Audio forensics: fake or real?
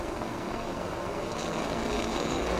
fake